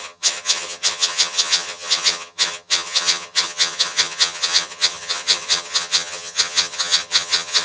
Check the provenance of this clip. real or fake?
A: fake